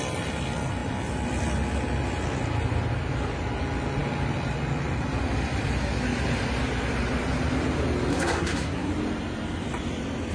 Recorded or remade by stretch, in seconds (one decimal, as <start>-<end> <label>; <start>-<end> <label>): 0.0-8.1 recorded; 8.1-8.9 remade; 8.9-10.3 recorded